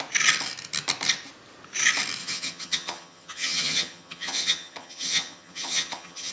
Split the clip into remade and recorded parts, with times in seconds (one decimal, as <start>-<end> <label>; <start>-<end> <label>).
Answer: 0.0-2.2 recorded; 2.2-6.3 remade